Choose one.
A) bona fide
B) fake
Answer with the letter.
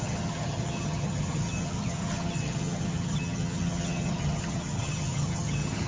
B